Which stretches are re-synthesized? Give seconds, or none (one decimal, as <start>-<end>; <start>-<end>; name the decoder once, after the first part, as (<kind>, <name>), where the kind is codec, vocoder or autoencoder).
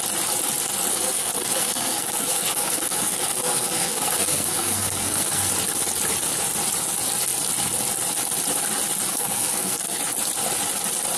0.9-5.5 (codec, SNAC); 9.1-10.0